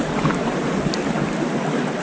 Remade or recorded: recorded